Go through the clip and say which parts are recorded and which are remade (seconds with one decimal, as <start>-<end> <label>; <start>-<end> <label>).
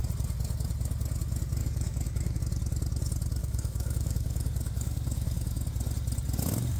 0.0-1.6 recorded; 1.6-2.4 remade; 2.4-3.4 recorded; 3.4-5.7 remade; 5.7-6.8 recorded